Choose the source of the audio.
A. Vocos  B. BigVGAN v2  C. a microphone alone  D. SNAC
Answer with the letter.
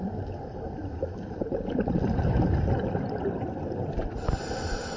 B